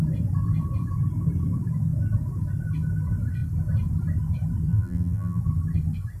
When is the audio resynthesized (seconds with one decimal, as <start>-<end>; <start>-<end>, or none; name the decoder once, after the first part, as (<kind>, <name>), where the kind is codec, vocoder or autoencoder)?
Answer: 4.7-5.4 (vocoder, BigVGAN v2)